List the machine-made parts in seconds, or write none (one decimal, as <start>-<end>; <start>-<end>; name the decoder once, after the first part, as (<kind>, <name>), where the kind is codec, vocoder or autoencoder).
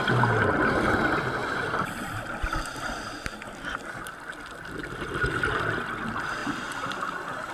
1.4-2.4 (vocoder, BigVGAN v2); 4.8-5.5; 6.4-7.5